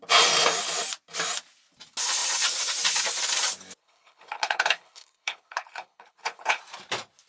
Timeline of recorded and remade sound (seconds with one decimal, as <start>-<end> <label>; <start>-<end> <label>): 0.0-3.8 recorded; 3.8-6.6 remade; 6.6-7.3 recorded